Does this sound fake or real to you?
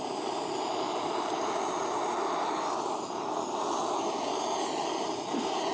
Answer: real